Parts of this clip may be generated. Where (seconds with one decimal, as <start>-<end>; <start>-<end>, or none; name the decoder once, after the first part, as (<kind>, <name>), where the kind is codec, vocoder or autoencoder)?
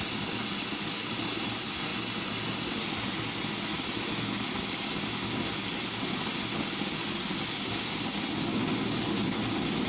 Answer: none